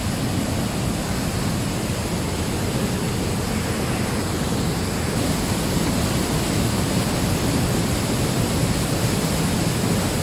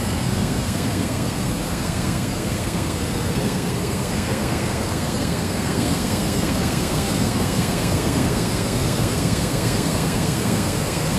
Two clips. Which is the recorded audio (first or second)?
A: first